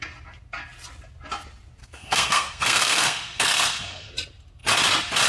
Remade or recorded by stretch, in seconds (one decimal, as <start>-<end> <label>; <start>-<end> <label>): 0.0-1.8 recorded; 1.8-4.1 remade; 4.1-5.3 recorded